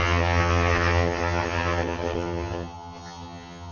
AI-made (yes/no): yes